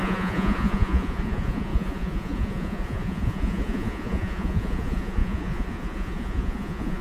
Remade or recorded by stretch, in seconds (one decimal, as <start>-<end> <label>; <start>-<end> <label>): 0.0-7.0 remade